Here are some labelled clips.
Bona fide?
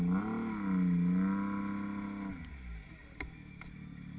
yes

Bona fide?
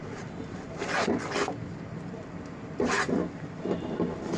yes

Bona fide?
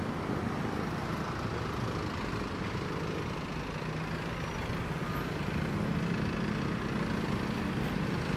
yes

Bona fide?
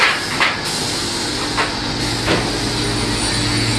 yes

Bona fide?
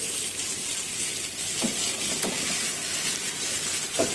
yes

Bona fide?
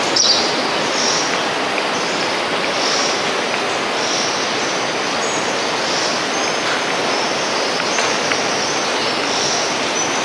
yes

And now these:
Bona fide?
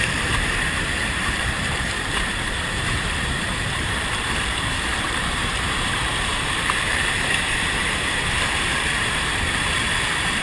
no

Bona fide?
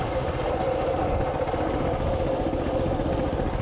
yes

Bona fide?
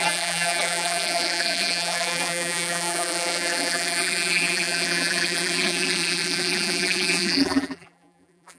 no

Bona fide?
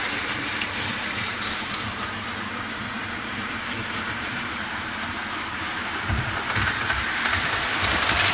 no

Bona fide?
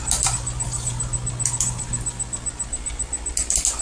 yes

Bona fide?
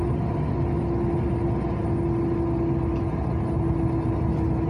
yes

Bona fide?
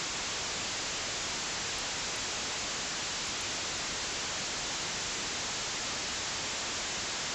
yes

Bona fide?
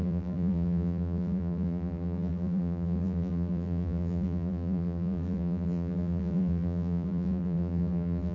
no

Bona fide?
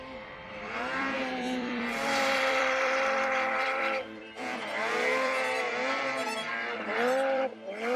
no